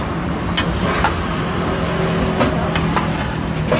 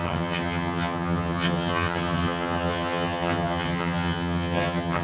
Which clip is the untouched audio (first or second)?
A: first